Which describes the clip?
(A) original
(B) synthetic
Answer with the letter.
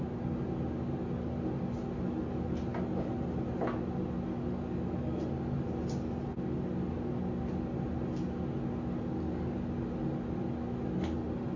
A